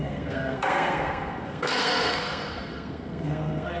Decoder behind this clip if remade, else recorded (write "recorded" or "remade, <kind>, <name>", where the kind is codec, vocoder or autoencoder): remade, codec, SNAC